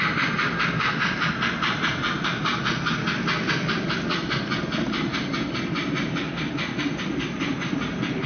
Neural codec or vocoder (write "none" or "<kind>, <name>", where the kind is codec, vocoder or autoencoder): none